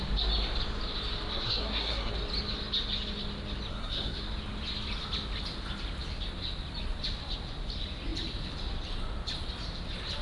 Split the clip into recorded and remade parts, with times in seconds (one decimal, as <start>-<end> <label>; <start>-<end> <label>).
0.0-1.3 recorded; 1.3-2.1 remade; 2.1-3.7 recorded; 3.7-4.2 remade; 4.2-10.2 recorded